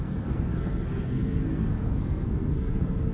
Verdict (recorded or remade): remade